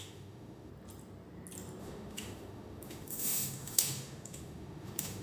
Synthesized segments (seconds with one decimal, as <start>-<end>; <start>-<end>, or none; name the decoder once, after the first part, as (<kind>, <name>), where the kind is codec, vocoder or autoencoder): 0.0-0.7 (autoencoder, DAC-VAE); 1.8-5.2